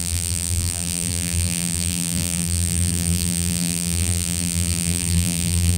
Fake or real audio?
fake